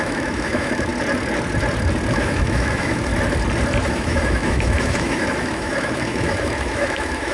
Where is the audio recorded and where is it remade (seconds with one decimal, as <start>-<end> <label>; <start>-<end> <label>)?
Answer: 0.0-0.9 remade; 0.9-2.1 recorded; 2.1-3.1 remade; 3.1-3.9 recorded; 3.9-7.3 remade